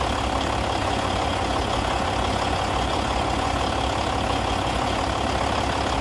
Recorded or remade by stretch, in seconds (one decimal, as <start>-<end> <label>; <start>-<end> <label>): 0.0-0.8 recorded; 0.8-3.6 remade; 3.6-4.3 recorded; 4.3-5.0 remade; 5.0-6.0 recorded